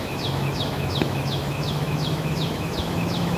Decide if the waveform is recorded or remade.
remade